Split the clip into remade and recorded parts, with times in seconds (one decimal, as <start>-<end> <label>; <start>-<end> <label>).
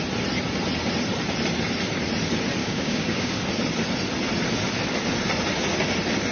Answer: 0.0-2.6 recorded; 2.6-3.4 remade; 3.4-6.3 recorded